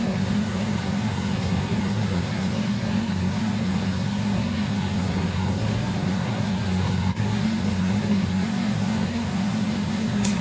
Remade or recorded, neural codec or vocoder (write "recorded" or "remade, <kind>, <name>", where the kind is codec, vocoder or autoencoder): remade, codec, SNAC